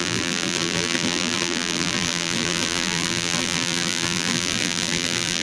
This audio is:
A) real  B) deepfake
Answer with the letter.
B